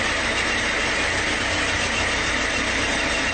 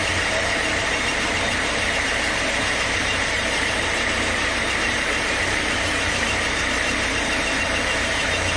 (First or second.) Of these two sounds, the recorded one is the first